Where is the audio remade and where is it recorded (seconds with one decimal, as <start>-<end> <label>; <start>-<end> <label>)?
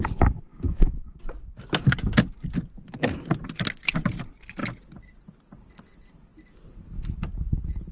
0.0-0.5 recorded; 0.5-1.2 remade; 1.2-7.9 recorded